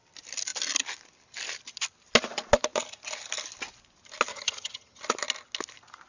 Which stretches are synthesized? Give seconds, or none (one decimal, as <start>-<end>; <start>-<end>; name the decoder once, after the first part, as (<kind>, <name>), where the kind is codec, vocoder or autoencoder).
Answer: 4.3-5.0 (vocoder, HiFi-GAN)

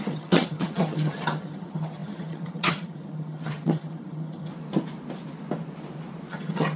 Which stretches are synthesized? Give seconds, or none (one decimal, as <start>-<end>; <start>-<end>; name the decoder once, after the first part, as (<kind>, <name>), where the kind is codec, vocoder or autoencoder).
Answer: 0.0-4.5 (vocoder, HiFi-GAN); 6.3-6.8

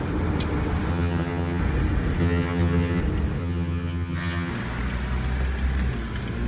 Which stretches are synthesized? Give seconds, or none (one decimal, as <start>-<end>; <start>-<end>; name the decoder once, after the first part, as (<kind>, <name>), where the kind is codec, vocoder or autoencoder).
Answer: 0.9-1.6 (vocoder, HiFi-GAN); 2.2-3.0; 3.4-4.5

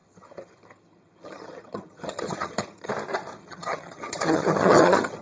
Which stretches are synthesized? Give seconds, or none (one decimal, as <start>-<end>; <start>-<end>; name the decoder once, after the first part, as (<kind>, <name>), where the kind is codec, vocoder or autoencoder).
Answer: 0.0-2.9 (vocoder, HiFi-GAN); 3.4-5.2

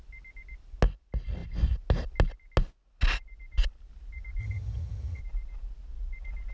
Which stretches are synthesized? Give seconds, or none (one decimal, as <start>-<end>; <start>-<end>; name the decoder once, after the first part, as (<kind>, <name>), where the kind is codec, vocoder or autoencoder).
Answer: 4.4-5.2 (vocoder, HiFi-GAN)

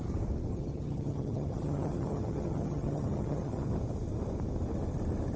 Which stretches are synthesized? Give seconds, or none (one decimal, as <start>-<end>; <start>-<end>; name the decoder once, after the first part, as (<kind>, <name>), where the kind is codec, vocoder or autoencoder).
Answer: 0.5-3.7 (vocoder, HiFi-GAN)

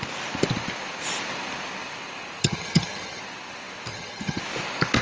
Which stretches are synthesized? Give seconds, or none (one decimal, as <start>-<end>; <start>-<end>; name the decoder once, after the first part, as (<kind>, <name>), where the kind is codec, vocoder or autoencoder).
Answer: 2.4-3.2 (vocoder, HiFi-GAN); 3.9-4.4